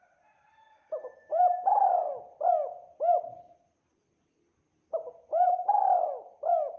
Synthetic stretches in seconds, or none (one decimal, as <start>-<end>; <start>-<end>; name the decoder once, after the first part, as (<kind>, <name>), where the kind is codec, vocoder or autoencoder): none